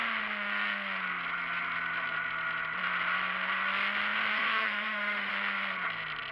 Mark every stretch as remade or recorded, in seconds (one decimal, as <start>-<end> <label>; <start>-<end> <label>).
0.0-4.3 recorded; 4.3-5.3 remade; 5.3-6.3 recorded